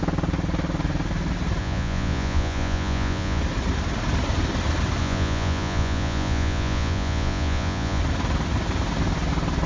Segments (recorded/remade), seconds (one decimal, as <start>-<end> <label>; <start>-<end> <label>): 0.0-1.6 recorded; 1.6-3.4 remade; 3.4-5.0 recorded; 5.0-8.0 remade; 8.0-9.7 recorded